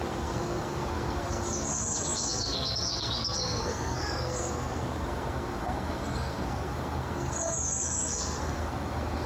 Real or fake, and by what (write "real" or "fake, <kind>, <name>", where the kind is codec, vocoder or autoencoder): fake, codec, SNAC